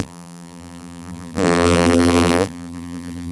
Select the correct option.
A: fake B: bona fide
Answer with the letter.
A